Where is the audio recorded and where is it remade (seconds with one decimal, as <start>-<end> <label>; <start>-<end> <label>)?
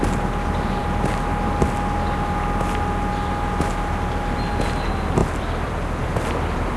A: 0.0-5.2 recorded; 5.2-6.0 remade; 6.0-6.8 recorded